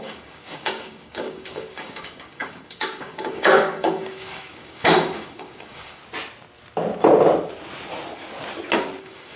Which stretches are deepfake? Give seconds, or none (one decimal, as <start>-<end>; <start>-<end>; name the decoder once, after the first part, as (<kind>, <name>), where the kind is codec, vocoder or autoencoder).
0.0-6.0 (codec, DAC); 9.0-9.4